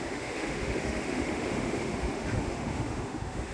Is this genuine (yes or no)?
no